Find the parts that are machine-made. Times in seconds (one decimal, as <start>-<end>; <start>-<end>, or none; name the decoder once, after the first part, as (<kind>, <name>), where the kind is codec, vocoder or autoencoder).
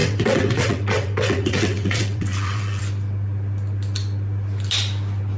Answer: 0.0-2.8 (vocoder, WaveNeXt)